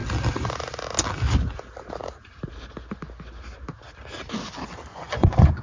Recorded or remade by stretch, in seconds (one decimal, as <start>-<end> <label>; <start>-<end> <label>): 0.0-4.9 recorded; 4.9-5.6 remade